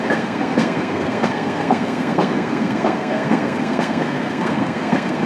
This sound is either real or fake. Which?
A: fake